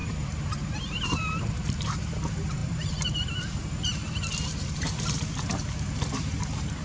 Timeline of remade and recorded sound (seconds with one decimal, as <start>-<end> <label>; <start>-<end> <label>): 0.0-6.8 remade